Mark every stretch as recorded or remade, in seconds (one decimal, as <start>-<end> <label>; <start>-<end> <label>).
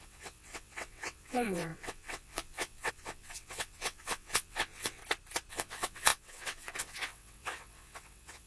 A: 0.0-5.0 remade; 5.0-5.5 recorded; 5.5-8.5 remade